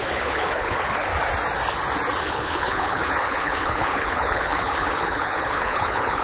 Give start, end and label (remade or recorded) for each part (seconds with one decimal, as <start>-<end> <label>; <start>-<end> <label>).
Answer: 0.0-1.1 remade; 1.1-2.2 recorded; 2.2-6.2 remade